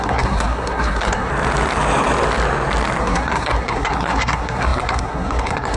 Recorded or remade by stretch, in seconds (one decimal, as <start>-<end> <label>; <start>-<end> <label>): 0.0-1.3 remade; 1.3-3.0 recorded; 3.0-5.8 remade